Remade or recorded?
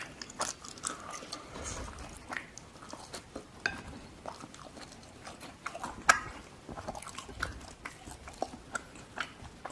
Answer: recorded